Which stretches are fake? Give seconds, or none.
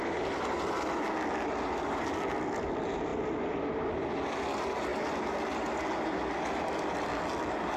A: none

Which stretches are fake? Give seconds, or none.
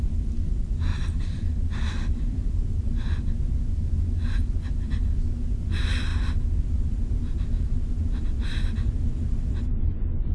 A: 0.9-2.9 (vocoder, BigVGAN v2)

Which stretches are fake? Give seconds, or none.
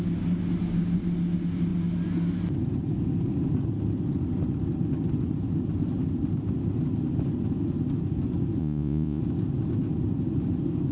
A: 8.6-9.2 (vocoder, Vocos)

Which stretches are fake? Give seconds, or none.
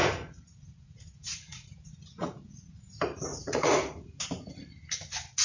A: 0.0-2.7 (vocoder, Vocos); 3.3-4.2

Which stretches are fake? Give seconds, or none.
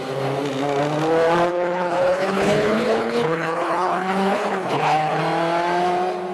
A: 1.5-5.2 (codec, HILCodec)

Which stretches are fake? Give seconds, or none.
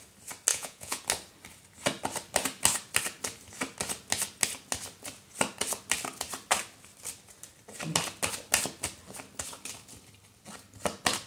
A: 0.5-1.0 (vocoder, Vocos)